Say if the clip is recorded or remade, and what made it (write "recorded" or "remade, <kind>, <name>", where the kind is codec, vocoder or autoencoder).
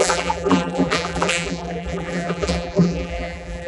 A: remade, vocoder, BigVGAN v2